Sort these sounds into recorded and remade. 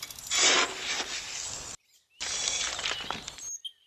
recorded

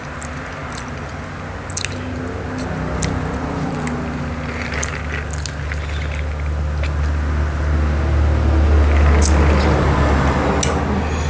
recorded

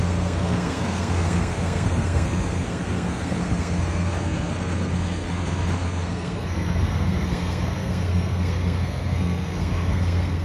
remade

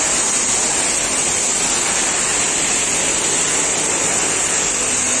recorded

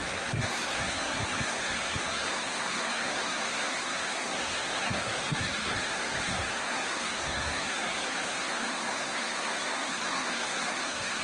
remade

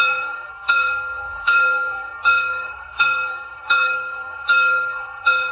remade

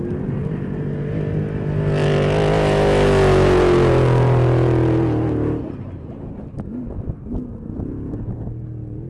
recorded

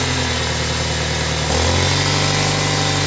recorded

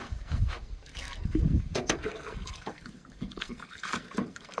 remade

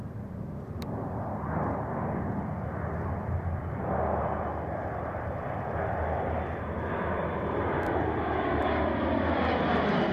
recorded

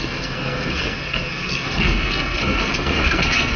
remade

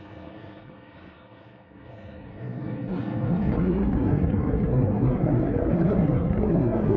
remade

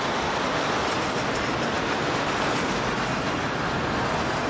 recorded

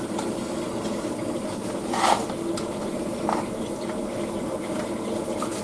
recorded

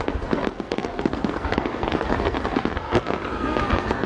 remade